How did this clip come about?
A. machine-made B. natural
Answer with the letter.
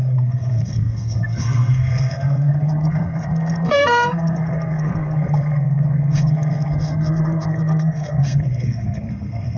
A